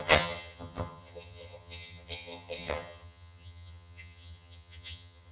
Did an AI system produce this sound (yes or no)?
yes